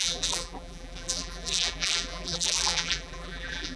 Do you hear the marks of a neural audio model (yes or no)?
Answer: yes